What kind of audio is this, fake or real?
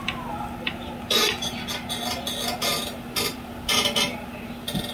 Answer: real